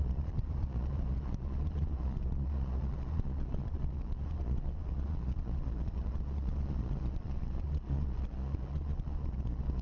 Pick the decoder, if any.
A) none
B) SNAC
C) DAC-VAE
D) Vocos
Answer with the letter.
D